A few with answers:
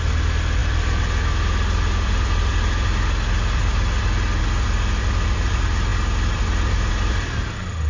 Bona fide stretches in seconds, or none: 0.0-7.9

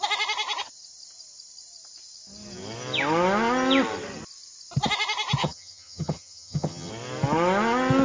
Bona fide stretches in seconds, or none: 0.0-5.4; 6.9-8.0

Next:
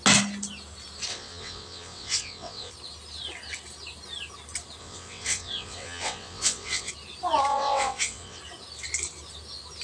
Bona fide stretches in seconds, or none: 0.0-1.1; 2.7-4.8; 6.9-7.5; 8.4-9.8

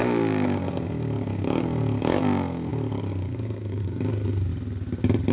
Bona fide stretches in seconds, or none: 4.5-5.3